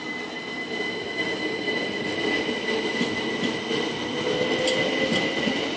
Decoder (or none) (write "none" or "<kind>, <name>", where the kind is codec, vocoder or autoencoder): none